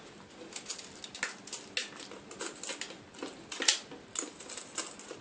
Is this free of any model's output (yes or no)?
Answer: yes